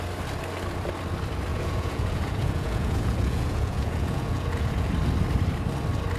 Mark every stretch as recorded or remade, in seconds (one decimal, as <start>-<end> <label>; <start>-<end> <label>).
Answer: 0.0-1.5 recorded; 1.5-4.9 remade; 4.9-6.2 recorded